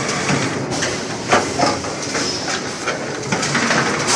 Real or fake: real